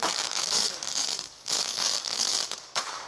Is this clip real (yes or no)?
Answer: no